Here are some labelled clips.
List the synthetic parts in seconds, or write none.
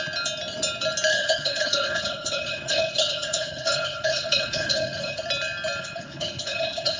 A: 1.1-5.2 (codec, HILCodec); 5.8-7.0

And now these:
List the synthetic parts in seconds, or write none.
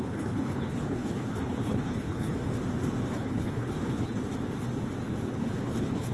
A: 0.0-2.3 (codec, HILCodec); 3.1-4.2; 5.4-6.1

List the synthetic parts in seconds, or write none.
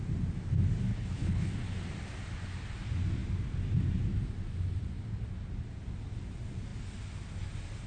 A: 0.9-1.5 (codec, HILCodec)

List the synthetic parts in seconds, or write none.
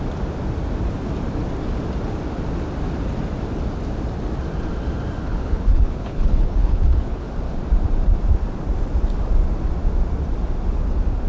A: 5.2-7.3 (codec, HILCodec)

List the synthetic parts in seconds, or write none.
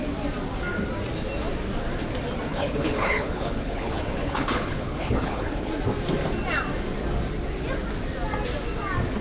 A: 2.5-5.7 (codec, HILCodec)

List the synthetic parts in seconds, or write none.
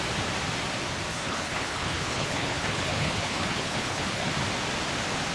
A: 1.1-4.3 (codec, HILCodec)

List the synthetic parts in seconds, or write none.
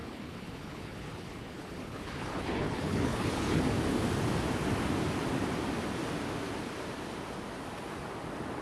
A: 0.0-3.6 (codec, HILCodec)